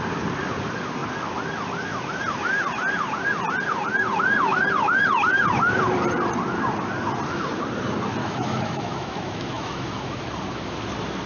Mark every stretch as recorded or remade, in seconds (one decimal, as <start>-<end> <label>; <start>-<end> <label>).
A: 0.0-8.2 recorded; 8.2-10.2 remade; 10.2-11.3 recorded

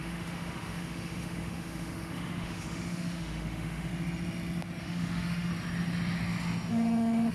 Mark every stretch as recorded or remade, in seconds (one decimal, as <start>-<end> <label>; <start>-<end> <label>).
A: 0.0-3.9 remade; 3.9-4.8 recorded; 4.8-5.5 remade; 5.5-6.7 recorded; 6.7-7.3 remade

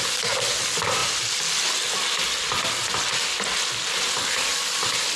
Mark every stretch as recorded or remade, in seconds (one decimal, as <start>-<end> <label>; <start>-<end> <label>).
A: 0.0-5.2 recorded